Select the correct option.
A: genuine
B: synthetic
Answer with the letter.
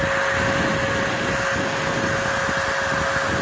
A